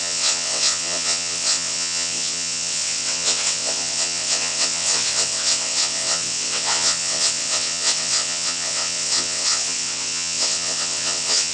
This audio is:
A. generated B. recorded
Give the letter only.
A